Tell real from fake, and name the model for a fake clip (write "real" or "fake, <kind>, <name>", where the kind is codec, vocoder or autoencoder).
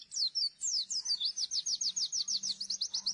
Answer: real